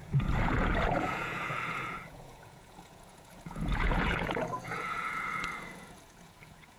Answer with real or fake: fake